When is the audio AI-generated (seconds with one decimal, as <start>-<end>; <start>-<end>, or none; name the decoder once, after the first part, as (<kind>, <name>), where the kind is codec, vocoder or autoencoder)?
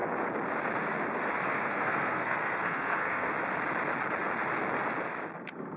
1.5-3.3 (codec, SNAC)